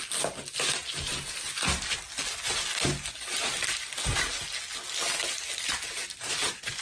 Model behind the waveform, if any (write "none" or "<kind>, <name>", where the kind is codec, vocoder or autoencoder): none